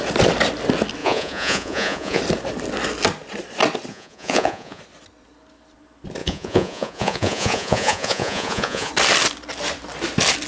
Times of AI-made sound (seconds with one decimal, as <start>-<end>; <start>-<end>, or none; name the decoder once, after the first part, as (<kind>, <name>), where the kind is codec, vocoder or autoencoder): 1.0-2.2 (vocoder, Vocos); 3.9-4.8; 6.2-8.9